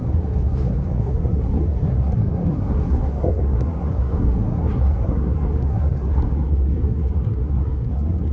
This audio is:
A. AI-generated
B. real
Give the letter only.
A